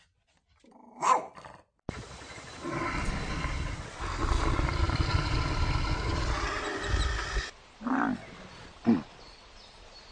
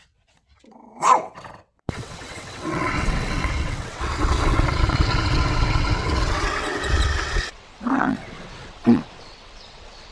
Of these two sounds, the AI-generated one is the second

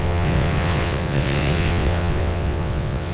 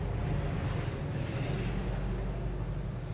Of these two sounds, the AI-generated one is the first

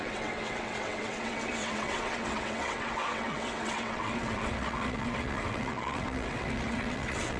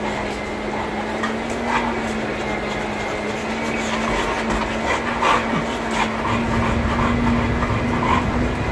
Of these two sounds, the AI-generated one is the first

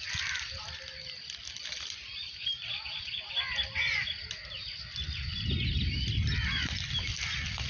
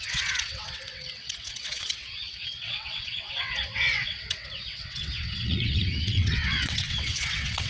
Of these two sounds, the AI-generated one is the second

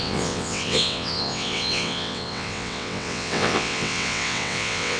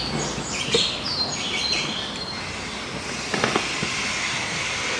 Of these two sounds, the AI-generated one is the first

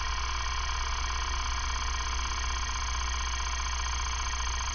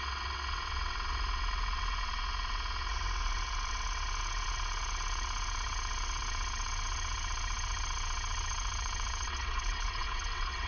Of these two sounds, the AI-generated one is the second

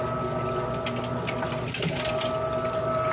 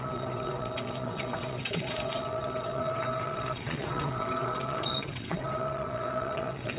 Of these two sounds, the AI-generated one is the second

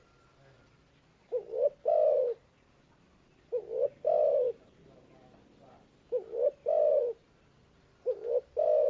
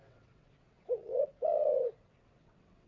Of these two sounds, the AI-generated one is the second